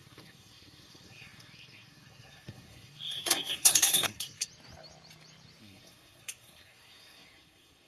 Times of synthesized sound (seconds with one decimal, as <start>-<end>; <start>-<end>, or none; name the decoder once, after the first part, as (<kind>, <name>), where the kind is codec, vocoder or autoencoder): 0.0-4.5 (codec, SNAC); 5.6-7.9